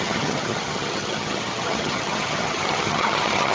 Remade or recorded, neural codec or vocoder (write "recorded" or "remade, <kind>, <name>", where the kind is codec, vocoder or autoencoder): remade, vocoder, HiFi-GAN